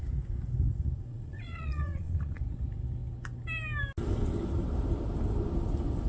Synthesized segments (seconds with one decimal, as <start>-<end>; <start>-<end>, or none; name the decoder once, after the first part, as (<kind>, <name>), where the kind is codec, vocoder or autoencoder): 1.1-2.4 (vocoder, Vocos)